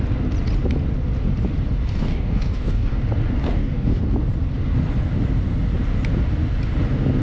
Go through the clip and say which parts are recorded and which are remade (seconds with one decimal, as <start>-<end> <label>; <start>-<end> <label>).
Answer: 0.0-1.9 recorded; 1.9-3.0 remade; 3.0-3.4 recorded; 3.4-4.0 remade; 4.0-7.2 recorded